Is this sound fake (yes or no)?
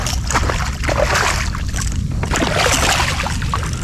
no